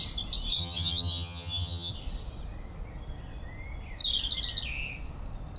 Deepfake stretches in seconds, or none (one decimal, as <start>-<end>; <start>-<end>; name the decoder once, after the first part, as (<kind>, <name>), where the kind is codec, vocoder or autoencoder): 0.6-1.9 (vocoder, HiFi-GAN)